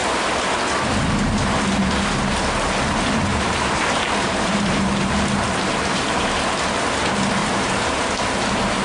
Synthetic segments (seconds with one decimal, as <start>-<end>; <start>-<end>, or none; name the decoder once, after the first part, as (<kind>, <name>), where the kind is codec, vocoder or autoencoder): 3.3-4.8 (vocoder, BigVGAN v2); 7.4-8.0